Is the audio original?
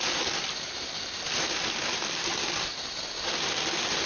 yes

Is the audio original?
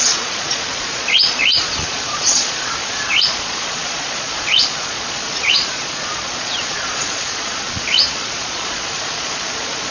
no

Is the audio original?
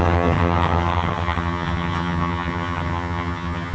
no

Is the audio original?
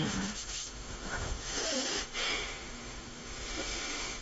no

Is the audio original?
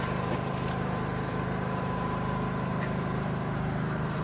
no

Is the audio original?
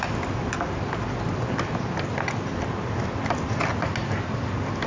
yes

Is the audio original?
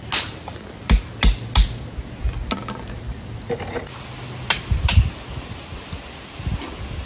yes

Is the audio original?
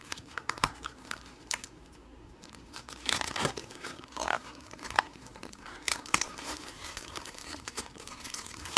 no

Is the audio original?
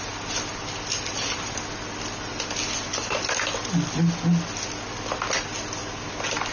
yes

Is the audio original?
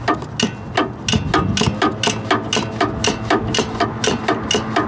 yes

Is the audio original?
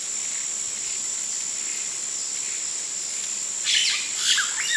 yes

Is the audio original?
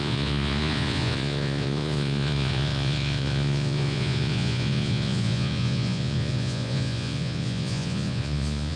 no